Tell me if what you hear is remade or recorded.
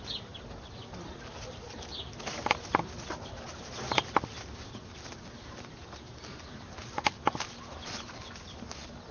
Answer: recorded